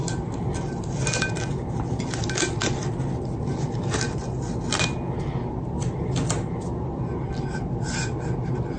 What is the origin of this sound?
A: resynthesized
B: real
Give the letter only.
B